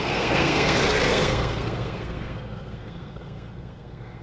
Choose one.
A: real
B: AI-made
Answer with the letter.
B